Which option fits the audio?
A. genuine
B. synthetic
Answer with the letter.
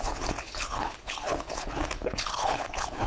B